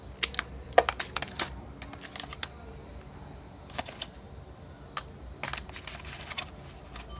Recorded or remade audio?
recorded